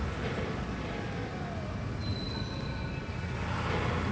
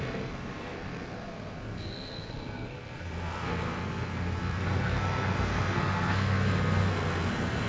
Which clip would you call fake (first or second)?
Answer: second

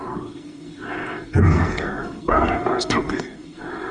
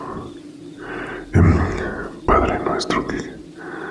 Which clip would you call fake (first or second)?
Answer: first